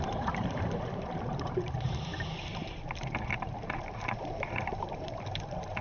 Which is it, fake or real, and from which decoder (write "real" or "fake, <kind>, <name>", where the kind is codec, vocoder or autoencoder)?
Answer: fake, vocoder, BigVGAN v2